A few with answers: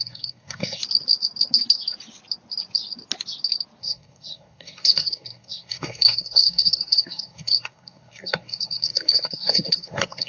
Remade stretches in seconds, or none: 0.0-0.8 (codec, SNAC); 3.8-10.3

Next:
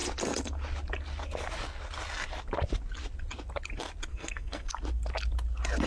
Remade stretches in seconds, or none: 4.1-4.7 (codec, SNAC)

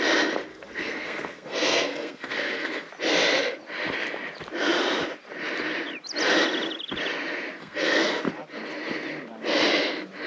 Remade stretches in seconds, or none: 0.5-2.9 (codec, SNAC); 7.6-8.2

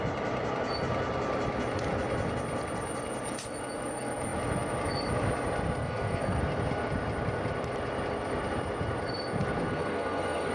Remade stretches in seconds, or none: 5.8-6.4 (codec, SNAC); 9.7-10.5

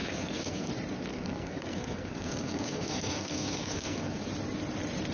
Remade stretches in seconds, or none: 0.0-0.7 (codec, SNAC); 1.1-4.2

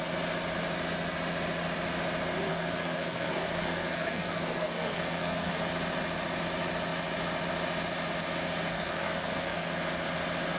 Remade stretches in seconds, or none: 2.5-5.5 (codec, SNAC); 8.7-9.7